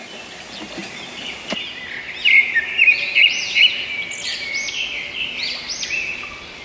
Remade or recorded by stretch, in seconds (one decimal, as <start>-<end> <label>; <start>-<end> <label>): 0.0-6.6 recorded